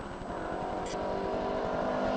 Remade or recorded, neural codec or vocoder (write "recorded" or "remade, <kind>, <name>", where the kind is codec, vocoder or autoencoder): recorded